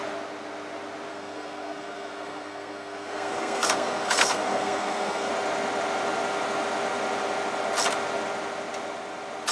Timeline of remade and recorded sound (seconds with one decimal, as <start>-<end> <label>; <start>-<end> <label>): 0.0-1.1 recorded; 1.1-5.3 remade; 5.3-9.5 recorded